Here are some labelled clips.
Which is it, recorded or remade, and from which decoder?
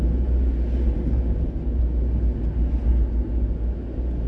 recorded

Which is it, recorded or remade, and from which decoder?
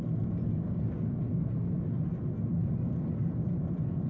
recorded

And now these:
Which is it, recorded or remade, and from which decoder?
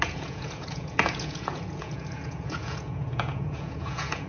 remade, vocoder, Vocos